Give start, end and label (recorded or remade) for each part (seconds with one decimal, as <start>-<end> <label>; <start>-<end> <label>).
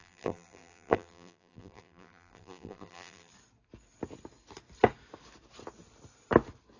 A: 0.0-3.3 remade; 3.3-6.8 recorded